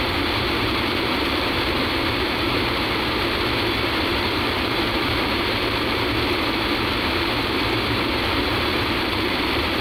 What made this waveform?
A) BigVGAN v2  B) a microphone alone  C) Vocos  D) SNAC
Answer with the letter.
A